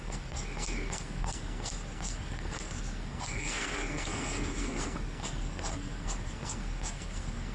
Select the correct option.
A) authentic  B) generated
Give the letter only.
B